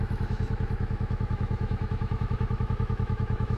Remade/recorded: remade